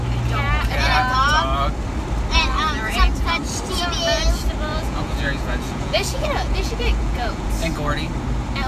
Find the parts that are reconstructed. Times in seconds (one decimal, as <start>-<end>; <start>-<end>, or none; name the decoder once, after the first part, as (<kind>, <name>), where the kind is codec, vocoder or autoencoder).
4.7-7.5 (vocoder, Vocos)